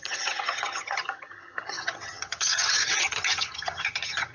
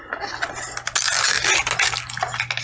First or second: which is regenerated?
first